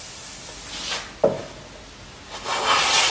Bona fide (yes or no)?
yes